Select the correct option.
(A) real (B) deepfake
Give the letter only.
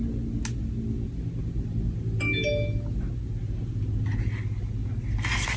A